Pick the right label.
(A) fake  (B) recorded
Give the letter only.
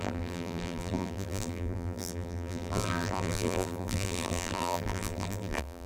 A